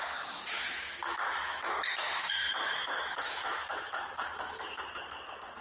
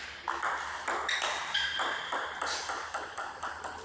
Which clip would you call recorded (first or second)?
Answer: second